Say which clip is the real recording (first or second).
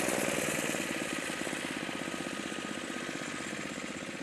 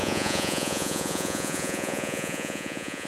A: first